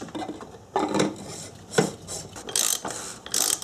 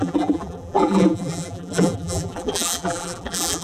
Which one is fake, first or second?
second